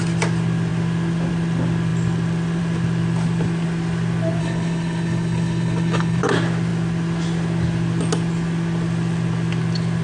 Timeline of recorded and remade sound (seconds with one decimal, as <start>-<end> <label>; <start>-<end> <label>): 0.0-4.4 recorded; 4.4-6.2 remade; 6.2-10.0 recorded